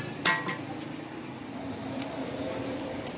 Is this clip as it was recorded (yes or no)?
yes